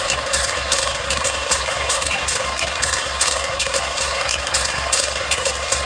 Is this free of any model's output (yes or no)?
no